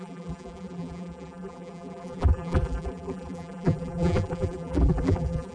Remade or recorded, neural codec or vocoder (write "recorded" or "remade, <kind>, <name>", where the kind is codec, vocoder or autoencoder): remade, vocoder, BigVGAN v2